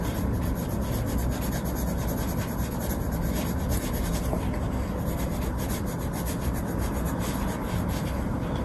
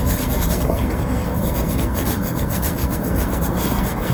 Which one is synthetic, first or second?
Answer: second